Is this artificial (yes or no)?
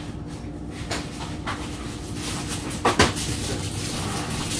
no